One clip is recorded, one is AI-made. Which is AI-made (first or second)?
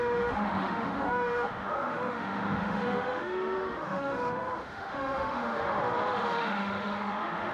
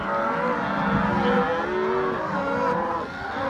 first